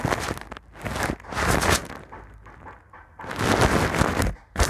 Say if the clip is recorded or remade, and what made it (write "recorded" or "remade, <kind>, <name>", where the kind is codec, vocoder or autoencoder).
recorded